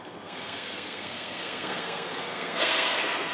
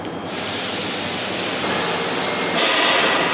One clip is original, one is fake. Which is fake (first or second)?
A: first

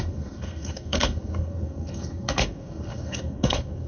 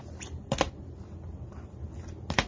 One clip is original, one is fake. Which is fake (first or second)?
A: first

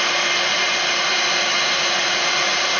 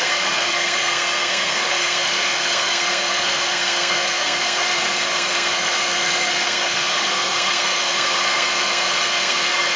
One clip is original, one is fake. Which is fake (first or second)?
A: second